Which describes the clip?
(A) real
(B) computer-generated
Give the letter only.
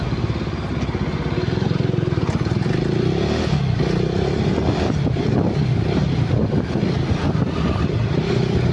A